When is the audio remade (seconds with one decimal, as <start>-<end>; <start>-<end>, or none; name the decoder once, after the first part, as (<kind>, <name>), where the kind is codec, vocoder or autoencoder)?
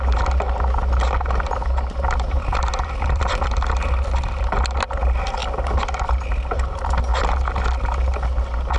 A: 2.5-3.4 (vocoder, BigVGAN v2)